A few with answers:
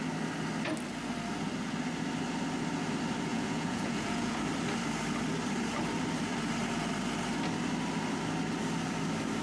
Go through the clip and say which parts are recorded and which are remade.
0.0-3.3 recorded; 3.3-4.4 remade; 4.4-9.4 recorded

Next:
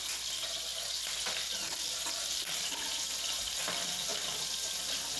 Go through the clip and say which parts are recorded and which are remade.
0.0-5.2 recorded

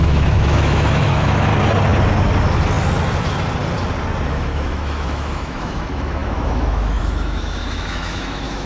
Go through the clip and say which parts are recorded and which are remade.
0.0-1.5 remade; 1.5-4.3 recorded; 4.3-8.7 remade

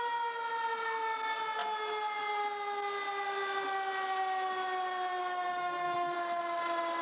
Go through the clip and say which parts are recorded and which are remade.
0.0-5.2 recorded; 5.2-6.4 remade; 6.4-7.0 recorded

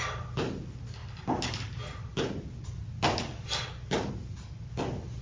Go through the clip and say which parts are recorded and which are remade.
0.0-5.2 recorded

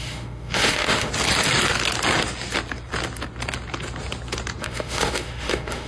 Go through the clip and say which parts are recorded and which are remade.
0.0-1.1 remade; 1.1-4.6 recorded; 4.6-5.9 remade

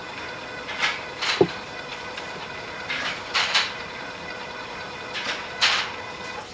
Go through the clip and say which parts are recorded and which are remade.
0.0-1.9 recorded; 1.9-5.8 remade; 5.8-6.5 recorded